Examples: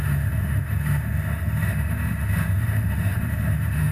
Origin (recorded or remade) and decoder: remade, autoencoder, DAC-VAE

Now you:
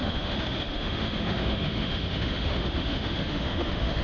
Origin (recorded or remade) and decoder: remade, autoencoder, DAC-VAE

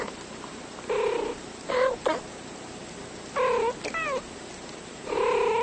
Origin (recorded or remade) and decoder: recorded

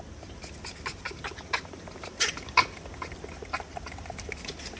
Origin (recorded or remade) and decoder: recorded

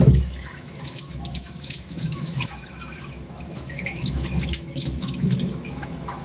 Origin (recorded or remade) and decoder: remade, autoencoder, DAC-VAE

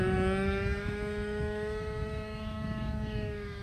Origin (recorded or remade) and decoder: remade, autoencoder, DAC-VAE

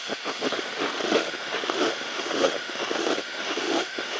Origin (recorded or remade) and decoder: remade, autoencoder, DAC-VAE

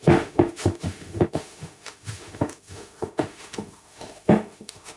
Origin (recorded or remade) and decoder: remade, autoencoder, DAC-VAE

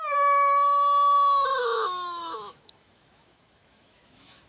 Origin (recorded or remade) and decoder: remade, autoencoder, DAC-VAE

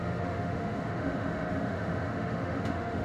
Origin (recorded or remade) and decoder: remade, autoencoder, DAC-VAE